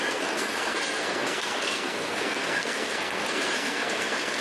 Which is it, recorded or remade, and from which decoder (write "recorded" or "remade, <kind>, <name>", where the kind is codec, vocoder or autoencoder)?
remade, codec, SNAC